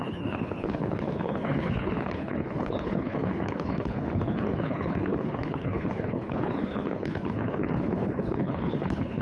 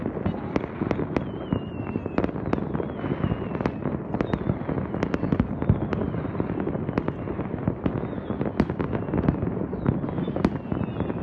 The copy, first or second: first